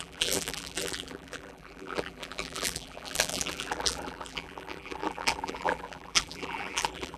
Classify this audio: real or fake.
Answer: fake